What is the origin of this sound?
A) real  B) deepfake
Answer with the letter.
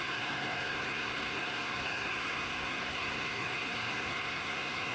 B